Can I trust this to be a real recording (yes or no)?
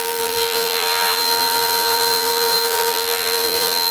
no